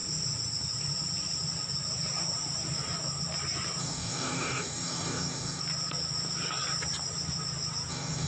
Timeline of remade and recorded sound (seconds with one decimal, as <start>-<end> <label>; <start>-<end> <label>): 0.0-3.8 recorded; 3.8-5.6 remade; 5.6-7.9 recorded; 7.9-8.3 remade